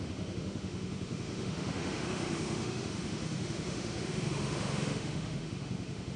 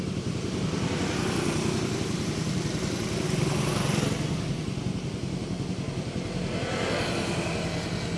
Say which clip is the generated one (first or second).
first